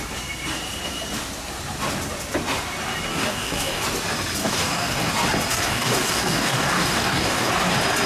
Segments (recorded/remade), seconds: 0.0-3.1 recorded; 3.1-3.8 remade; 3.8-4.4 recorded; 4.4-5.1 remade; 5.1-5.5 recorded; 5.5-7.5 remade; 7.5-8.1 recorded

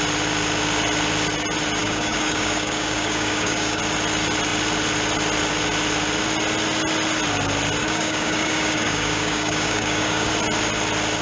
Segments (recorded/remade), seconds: 0.0-1.8 recorded; 1.8-3.8 remade; 3.8-7.8 recorded; 7.8-10.3 remade; 10.3-11.2 recorded

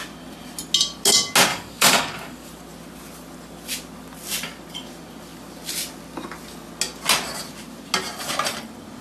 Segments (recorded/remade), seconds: 0.0-1.5 recorded; 1.5-2.5 remade; 2.5-9.0 recorded

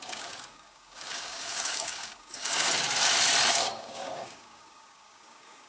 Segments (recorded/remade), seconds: 0.0-2.7 remade; 2.7-3.5 recorded; 3.5-5.7 remade

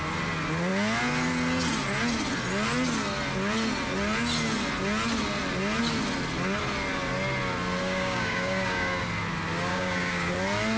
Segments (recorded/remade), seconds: 0.0-7.8 recorded; 7.8-9.0 remade; 9.0-9.7 recorded; 9.7-10.3 remade; 10.3-10.8 recorded

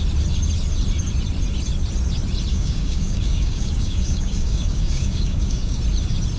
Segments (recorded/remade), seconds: 0.0-2.5 recorded; 2.5-5.8 remade; 5.8-6.4 recorded

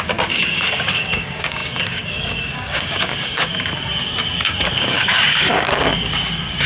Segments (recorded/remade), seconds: 0.0-6.7 remade